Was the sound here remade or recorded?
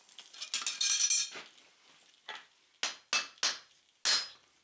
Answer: recorded